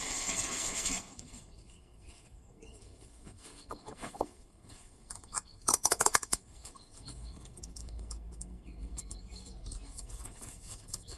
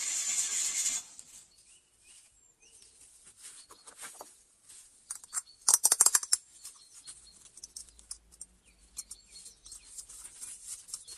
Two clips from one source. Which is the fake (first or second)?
first